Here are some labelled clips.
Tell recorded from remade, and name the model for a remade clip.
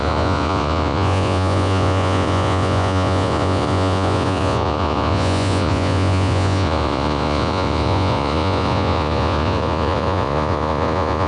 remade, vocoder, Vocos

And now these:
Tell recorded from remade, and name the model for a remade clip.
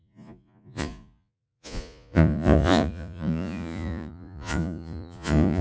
remade, vocoder, Vocos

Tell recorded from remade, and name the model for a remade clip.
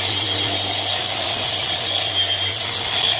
recorded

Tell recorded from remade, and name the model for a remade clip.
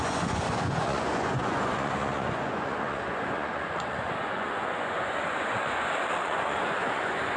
remade, vocoder, Vocos